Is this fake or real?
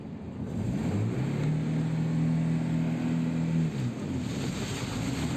real